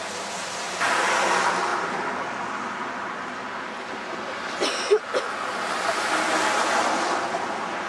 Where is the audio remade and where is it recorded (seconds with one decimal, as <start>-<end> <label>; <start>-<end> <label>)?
0.0-7.9 recorded